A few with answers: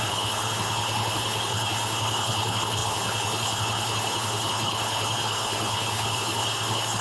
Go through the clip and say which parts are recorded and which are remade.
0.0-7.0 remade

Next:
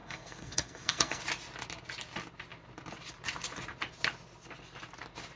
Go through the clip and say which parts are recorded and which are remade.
0.0-1.2 remade; 1.2-5.4 recorded

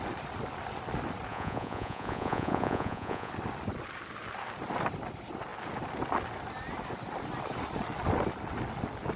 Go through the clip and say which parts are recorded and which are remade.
0.0-1.3 recorded; 1.3-3.3 remade; 3.3-9.2 recorded